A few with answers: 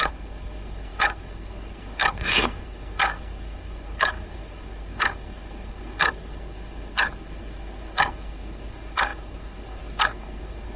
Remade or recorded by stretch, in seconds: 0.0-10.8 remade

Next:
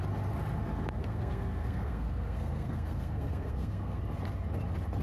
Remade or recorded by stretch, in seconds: 0.0-1.0 recorded; 1.0-4.0 remade; 4.0-5.0 recorded

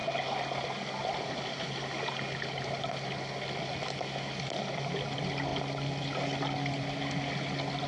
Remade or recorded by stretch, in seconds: 0.0-7.9 recorded

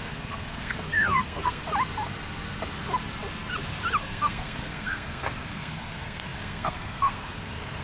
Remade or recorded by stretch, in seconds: 0.0-1.6 remade; 1.6-4.0 recorded; 4.0-7.8 remade